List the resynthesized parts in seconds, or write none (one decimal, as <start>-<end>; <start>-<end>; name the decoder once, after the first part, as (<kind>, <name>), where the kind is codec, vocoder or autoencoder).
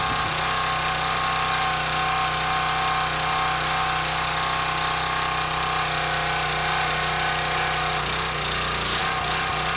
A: none